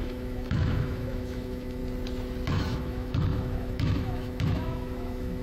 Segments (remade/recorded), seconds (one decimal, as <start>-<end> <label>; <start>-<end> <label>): 0.0-1.8 remade; 1.8-2.5 recorded; 2.5-5.4 remade